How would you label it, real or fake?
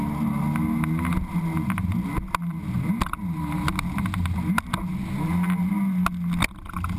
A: real